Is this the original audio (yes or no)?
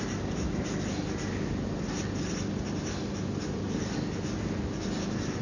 yes